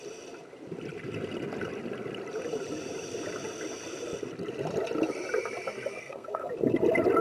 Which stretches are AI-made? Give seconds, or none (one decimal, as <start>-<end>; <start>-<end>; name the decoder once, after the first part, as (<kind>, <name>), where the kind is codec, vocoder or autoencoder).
6.0-6.5 (codec, SNAC)